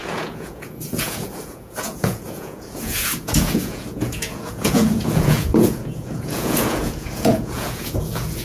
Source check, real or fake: fake